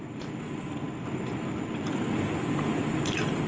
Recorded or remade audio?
recorded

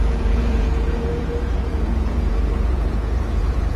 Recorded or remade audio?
remade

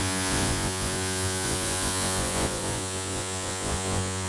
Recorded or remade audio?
remade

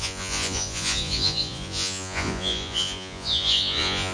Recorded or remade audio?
remade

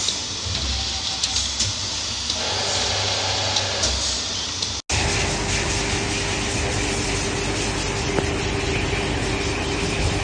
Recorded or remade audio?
recorded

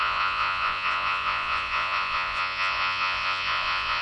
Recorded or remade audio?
remade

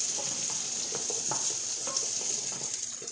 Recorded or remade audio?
recorded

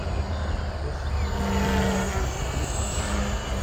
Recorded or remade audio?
recorded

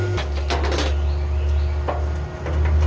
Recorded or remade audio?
recorded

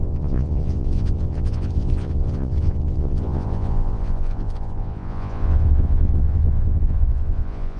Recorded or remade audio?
remade